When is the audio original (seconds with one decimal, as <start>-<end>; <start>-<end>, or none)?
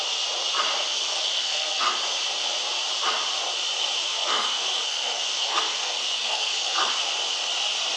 0.0-0.9; 1.9-4.0; 6.9-8.0